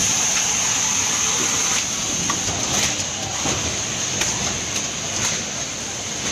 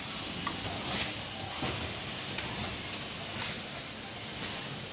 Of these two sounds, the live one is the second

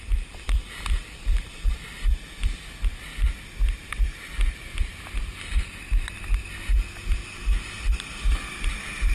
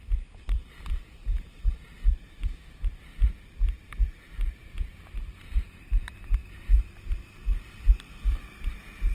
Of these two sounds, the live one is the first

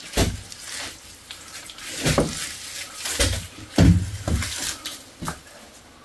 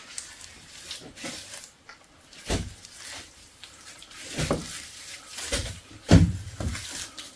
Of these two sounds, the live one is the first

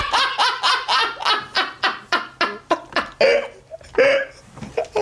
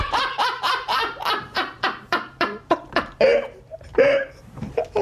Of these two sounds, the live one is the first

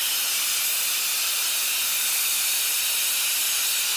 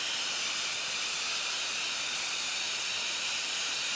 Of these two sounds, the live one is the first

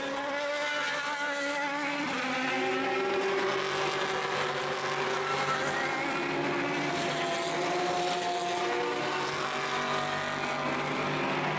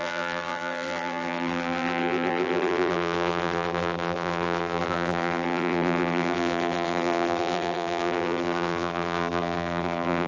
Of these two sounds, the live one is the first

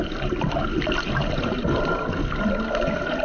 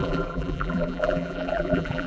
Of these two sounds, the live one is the first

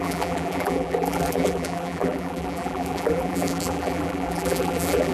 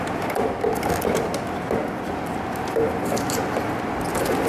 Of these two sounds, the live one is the second